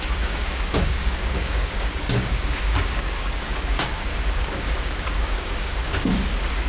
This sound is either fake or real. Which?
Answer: fake